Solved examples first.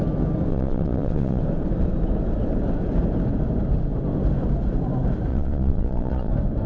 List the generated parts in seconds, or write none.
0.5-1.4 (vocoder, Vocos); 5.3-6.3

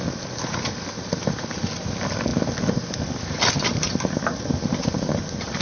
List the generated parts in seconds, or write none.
none

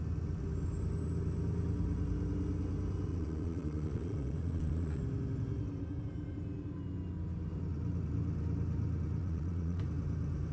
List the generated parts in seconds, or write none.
3.1-5.0 (vocoder, Vocos); 9.2-9.8

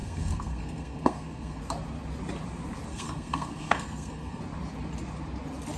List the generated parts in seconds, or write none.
0.0-1.6 (codec, SNAC); 2.9-4.4

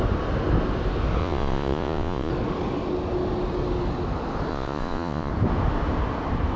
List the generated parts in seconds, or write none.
1.2-2.3 (vocoder, Vocos); 4.5-5.3

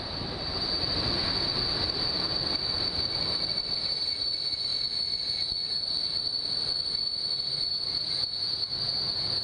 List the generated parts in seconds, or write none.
none